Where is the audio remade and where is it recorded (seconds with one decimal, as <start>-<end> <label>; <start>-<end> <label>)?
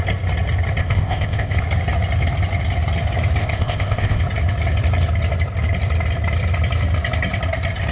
0.0-0.8 recorded; 0.8-1.6 remade; 1.6-3.4 recorded; 3.4-4.2 remade; 4.2-7.9 recorded